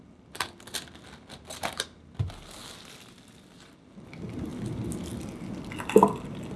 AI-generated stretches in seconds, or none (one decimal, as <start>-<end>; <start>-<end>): none